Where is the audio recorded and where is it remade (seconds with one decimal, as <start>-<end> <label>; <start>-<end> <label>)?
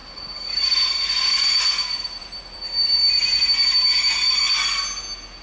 0.0-1.6 remade; 1.6-2.2 recorded; 2.2-4.4 remade; 4.4-5.4 recorded